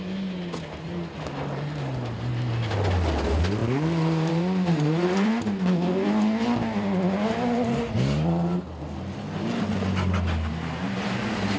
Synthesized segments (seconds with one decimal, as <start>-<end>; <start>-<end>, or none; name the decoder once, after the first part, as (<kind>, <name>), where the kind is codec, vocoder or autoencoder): 3.6-5.3 (vocoder, BigVGAN v2)